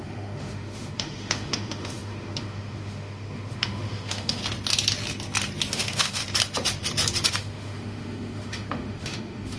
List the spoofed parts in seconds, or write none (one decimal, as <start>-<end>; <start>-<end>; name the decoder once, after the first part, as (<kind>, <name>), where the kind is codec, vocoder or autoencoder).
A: 0.0-4.4 (autoencoder, DAC-VAE); 5.7-6.2; 7.3-9.6